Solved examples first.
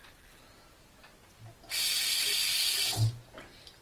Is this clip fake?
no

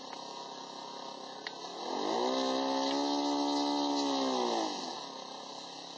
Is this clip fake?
no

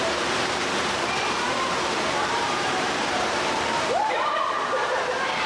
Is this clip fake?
yes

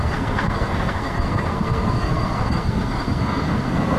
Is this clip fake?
yes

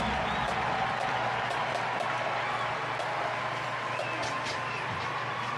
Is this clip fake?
no